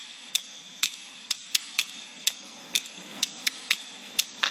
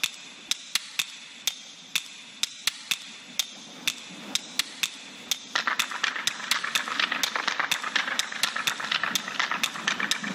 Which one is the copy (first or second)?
first